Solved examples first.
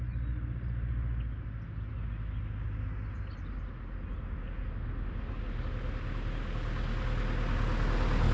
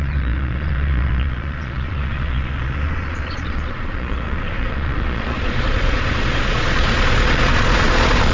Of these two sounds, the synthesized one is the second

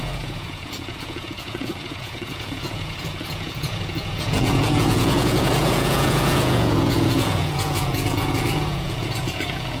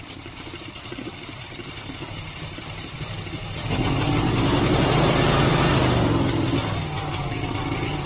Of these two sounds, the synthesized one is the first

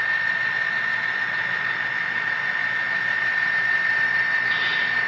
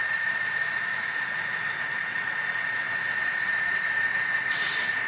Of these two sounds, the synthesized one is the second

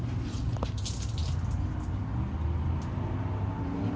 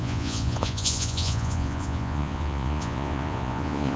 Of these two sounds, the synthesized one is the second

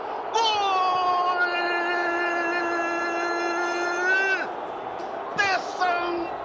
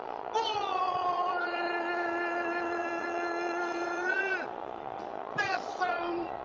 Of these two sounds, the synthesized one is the second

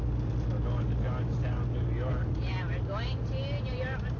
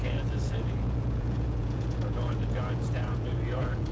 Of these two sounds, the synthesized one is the second